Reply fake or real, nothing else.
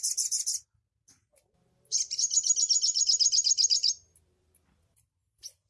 real